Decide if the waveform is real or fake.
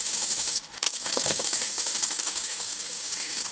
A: fake